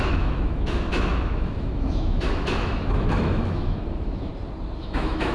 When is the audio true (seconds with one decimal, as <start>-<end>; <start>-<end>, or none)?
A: 4.3-4.8